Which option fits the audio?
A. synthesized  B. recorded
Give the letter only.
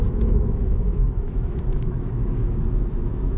A